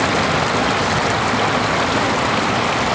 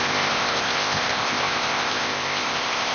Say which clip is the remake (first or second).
second